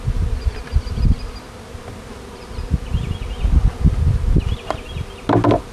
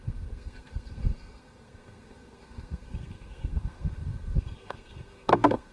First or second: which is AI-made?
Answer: second